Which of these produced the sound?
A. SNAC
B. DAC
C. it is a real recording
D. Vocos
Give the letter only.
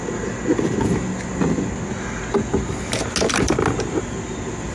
C